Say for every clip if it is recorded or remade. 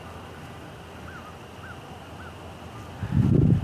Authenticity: recorded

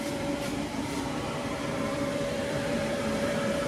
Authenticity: remade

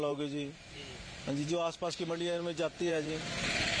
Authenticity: remade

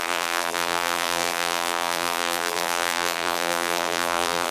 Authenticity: remade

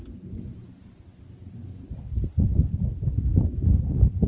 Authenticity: recorded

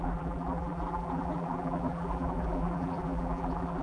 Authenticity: remade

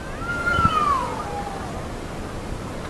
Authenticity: recorded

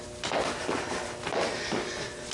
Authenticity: recorded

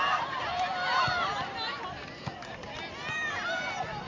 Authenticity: recorded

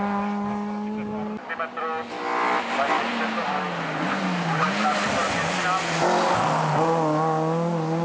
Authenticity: recorded